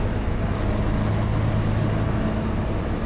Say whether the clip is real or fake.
real